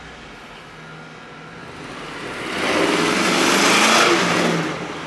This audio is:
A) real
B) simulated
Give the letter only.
A